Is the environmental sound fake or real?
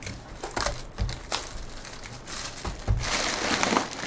real